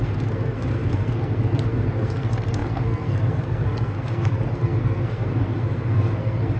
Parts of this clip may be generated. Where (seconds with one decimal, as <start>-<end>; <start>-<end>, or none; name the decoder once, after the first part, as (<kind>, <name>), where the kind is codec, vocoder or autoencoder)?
0.0-6.6 (codec, SNAC)